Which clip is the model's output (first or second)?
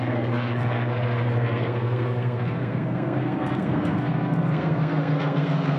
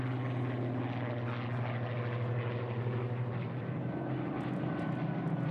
first